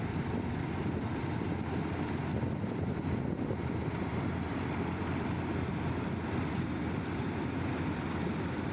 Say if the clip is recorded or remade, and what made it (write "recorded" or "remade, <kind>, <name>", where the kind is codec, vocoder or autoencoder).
remade, vocoder, BigVGAN v2